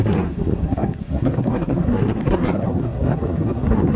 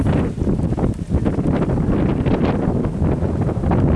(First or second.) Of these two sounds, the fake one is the first